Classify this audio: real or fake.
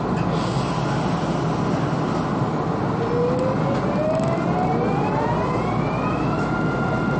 real